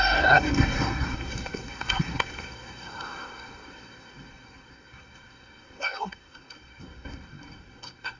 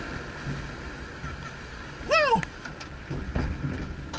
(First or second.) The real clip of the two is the second